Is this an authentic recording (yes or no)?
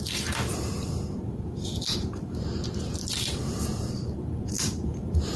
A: no